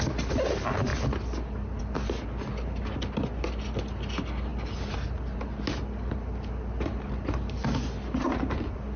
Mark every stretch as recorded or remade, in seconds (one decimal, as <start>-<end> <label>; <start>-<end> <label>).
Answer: 0.0-9.0 recorded